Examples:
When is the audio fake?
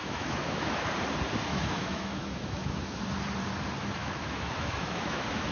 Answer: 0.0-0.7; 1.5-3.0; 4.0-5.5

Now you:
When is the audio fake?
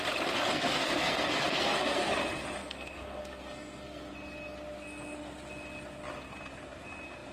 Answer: 0.5-2.1; 2.6-4.1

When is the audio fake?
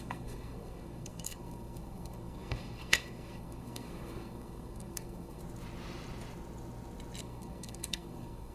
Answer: 0.0-5.4; 7.2-8.5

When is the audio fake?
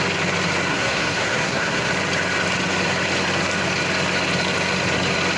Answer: 0.7-1.9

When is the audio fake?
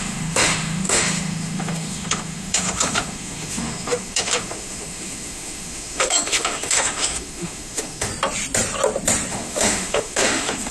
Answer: 0.0-8.1; 9.3-10.7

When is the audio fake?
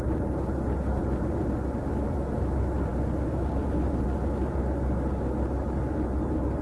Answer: none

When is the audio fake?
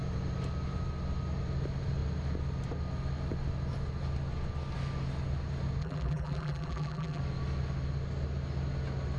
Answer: 5.8-7.2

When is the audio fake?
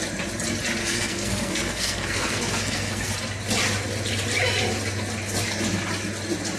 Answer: 0.8-3.1